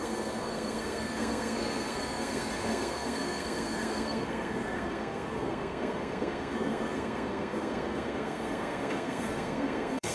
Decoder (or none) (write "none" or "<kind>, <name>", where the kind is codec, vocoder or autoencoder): codec, SNAC